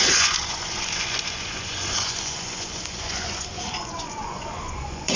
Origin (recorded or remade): remade